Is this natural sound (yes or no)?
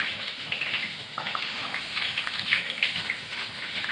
no